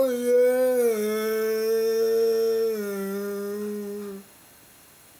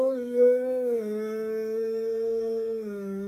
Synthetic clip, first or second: second